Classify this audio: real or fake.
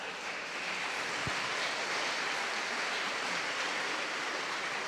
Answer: fake